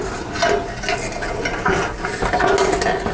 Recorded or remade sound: recorded